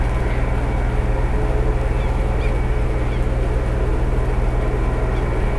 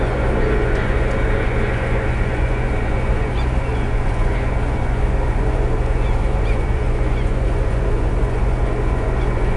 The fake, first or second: second